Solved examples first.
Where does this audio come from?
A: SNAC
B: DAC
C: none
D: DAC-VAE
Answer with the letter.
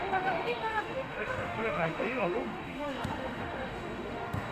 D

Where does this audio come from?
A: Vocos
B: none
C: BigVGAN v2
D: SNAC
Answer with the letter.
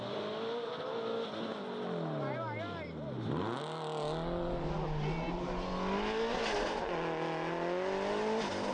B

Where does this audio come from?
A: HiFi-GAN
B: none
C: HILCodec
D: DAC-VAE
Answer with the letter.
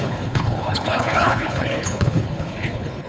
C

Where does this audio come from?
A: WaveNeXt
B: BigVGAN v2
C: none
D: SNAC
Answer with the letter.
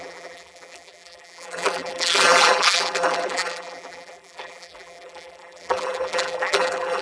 B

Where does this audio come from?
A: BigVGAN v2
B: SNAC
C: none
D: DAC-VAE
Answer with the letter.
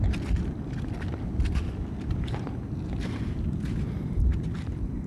C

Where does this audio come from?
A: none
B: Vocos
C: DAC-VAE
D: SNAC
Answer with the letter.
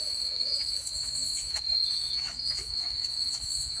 C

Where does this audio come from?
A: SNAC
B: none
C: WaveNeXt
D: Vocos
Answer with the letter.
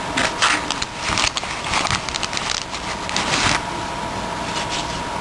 B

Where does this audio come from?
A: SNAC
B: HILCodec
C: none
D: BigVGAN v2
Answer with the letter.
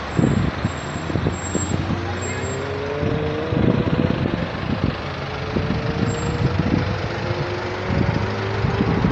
C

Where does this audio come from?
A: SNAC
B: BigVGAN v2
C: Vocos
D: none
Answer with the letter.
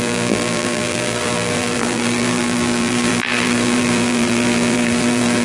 B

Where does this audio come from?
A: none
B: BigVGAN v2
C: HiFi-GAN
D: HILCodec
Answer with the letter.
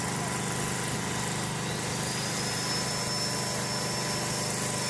A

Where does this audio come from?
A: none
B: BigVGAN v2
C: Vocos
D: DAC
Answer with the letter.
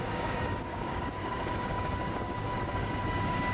D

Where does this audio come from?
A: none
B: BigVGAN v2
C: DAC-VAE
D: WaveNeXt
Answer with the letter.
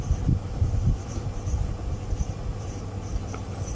A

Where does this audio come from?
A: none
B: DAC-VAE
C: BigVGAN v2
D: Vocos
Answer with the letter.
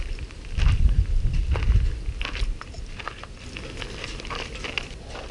A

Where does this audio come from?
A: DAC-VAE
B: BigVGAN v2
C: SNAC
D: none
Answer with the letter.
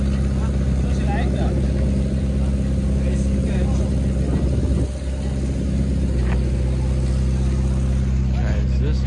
D